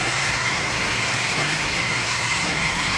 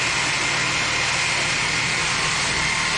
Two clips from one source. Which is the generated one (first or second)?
first